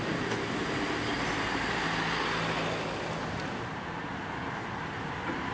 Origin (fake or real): real